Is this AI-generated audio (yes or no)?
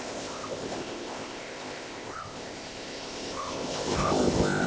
yes